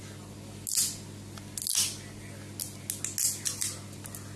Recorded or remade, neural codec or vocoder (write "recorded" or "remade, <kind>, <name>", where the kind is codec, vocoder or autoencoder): recorded